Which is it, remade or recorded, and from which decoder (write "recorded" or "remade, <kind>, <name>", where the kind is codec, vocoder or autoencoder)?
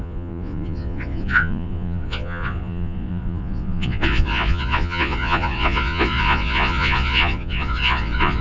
remade, vocoder, Vocos